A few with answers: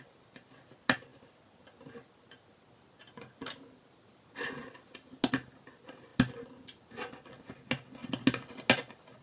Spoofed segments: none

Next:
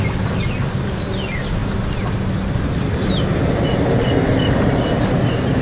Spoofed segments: none

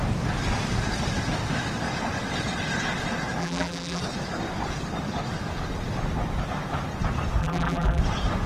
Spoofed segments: 3.4-4.0 (vocoder, BigVGAN v2); 7.4-8.0

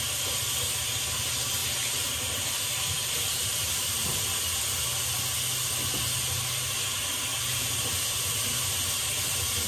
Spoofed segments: 1.6-3.6 (vocoder, BigVGAN v2); 7.3-8.2

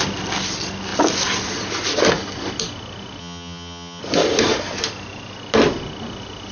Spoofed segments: 3.2-4.0 (vocoder, HiFi-GAN)

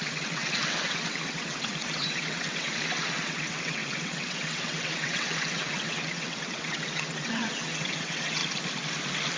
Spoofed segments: 0.0-8.4 (vocoder, WaveNeXt)

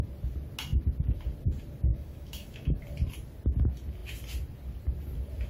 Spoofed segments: 1.9-2.8 (autoencoder, DAC-VAE)